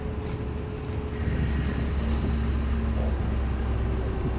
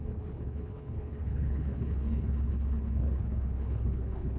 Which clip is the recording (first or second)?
first